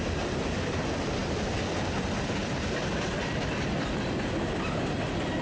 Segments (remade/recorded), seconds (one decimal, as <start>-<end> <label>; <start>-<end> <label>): 0.0-1.2 recorded; 1.2-2.0 remade; 2.0-2.4 recorded; 2.4-3.8 remade; 3.8-5.4 recorded